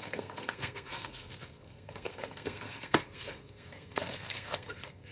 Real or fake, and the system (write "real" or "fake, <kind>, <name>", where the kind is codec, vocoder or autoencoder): fake, codec, SNAC